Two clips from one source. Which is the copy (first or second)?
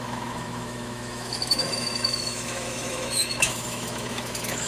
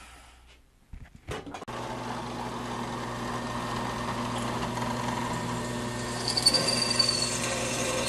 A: first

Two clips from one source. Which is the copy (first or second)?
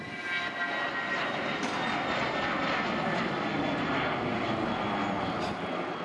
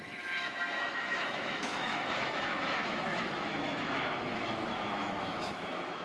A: second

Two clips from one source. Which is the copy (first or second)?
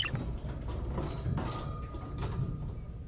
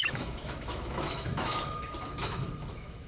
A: second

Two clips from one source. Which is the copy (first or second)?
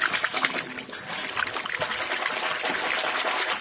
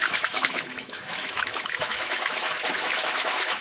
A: second